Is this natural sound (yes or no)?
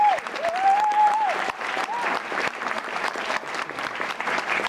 no